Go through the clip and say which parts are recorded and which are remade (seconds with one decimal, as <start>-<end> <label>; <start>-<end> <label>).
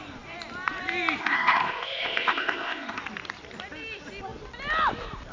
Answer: 0.0-1.2 recorded; 1.2-3.0 remade; 3.0-5.3 recorded